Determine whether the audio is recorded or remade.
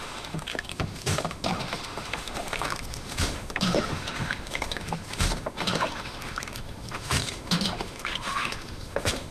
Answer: remade